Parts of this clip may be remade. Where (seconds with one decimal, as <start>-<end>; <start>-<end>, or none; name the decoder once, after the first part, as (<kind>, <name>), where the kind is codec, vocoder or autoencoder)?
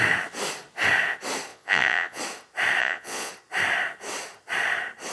1.5-2.2 (vocoder, Vocos); 2.8-3.3